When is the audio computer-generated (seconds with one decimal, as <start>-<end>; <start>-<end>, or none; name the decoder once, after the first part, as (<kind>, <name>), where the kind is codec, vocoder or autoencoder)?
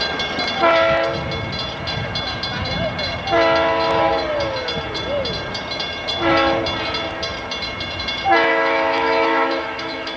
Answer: 8.5-10.2 (autoencoder, DAC-VAE)